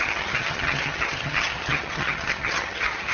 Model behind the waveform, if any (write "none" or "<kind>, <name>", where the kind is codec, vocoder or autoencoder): vocoder, HiFi-GAN